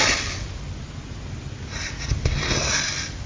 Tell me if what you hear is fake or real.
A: real